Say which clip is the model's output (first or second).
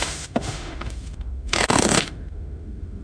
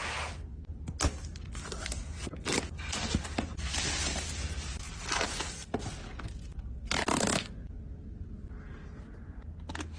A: first